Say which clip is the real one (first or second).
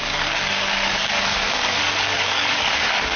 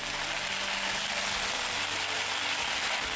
second